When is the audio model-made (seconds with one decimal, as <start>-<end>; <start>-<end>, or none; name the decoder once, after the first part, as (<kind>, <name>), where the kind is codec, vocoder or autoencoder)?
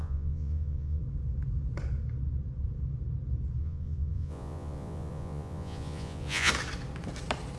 0.0-1.0 (vocoder, Vocos); 3.6-6.5